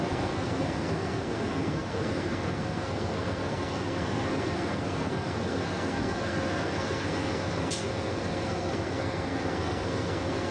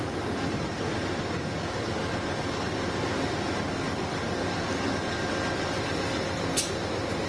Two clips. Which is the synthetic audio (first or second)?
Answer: first